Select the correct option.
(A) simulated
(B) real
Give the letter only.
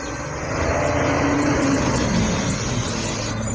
B